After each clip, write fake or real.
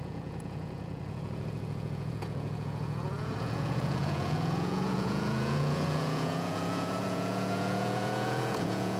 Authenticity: fake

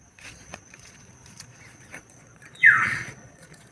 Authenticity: fake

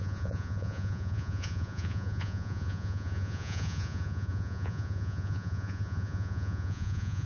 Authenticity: fake